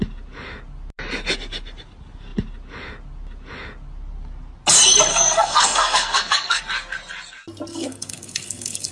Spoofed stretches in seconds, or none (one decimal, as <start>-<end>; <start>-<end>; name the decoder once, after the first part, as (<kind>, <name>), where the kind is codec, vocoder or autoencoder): 5.1-6.6 (codec, SNAC); 7.7-8.9

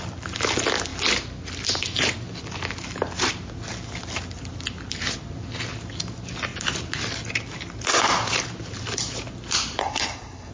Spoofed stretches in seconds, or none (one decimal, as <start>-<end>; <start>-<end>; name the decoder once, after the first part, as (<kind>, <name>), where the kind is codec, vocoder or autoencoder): 9.8-10.5 (codec, HILCodec)

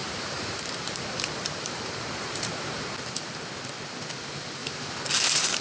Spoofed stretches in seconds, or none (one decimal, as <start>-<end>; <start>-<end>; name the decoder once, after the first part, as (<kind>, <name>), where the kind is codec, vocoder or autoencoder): 0.0-3.3 (vocoder, BigVGAN v2); 4.6-5.6

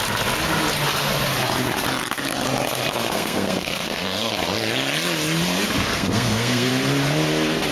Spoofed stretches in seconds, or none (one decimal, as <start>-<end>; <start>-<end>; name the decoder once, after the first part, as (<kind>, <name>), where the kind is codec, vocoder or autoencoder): 2.9-4.3 (codec, SNAC); 5.9-6.7

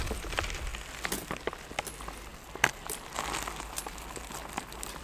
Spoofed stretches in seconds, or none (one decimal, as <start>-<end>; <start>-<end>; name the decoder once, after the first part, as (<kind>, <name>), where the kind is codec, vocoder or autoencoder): none

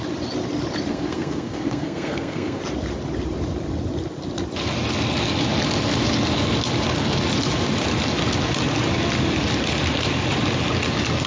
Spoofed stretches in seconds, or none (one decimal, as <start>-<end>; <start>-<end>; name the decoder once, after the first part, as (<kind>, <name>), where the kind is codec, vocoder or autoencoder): 0.9-2.6 (codec, SNAC)